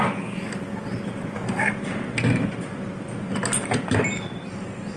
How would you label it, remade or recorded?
recorded